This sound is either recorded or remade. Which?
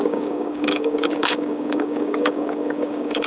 remade